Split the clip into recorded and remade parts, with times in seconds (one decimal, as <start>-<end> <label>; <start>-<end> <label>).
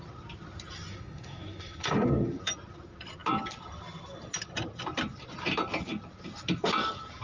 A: 0.0-0.9 recorded; 0.9-2.4 remade; 2.4-7.2 recorded